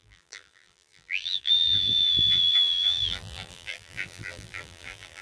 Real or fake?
fake